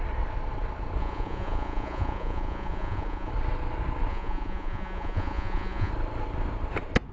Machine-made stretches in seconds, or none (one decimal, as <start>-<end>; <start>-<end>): 1.0-3.3; 4.1-5.9